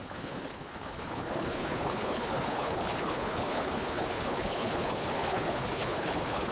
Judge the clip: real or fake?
fake